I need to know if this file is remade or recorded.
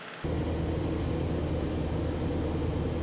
recorded